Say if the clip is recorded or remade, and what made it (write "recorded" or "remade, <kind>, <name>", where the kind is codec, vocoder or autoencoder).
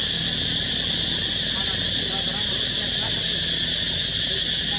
recorded